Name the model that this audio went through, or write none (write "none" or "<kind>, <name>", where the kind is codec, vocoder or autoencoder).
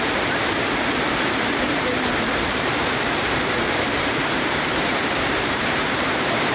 vocoder, BigVGAN v2